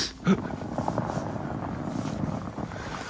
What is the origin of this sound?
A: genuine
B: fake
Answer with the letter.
A